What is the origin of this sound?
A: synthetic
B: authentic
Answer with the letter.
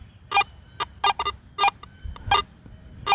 B